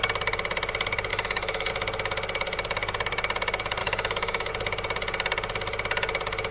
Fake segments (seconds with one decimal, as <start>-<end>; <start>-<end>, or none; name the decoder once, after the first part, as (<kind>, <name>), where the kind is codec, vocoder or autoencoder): 1.1-1.7 (autoencoder, DAC-VAE); 3.8-4.5